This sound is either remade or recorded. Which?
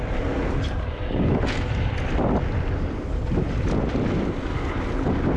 recorded